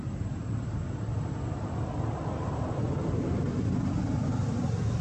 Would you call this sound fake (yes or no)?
no